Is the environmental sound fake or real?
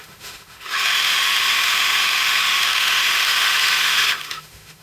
fake